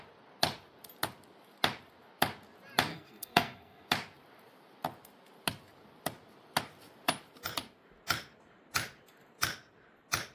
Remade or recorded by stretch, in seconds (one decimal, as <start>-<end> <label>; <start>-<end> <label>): 0.0-2.9 recorded; 2.9-3.9 remade; 3.9-10.3 recorded